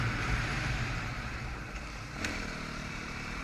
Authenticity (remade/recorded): remade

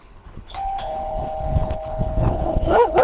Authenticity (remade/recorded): remade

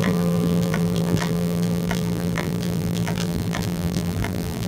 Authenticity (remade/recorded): remade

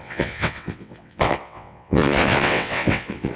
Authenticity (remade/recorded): remade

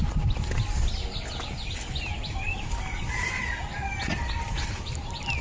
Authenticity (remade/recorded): remade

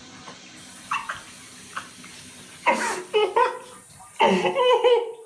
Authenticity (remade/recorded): recorded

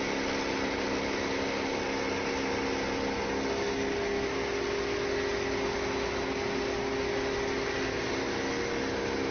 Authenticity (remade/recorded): recorded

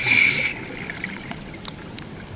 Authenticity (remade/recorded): recorded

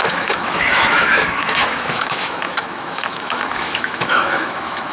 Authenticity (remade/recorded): remade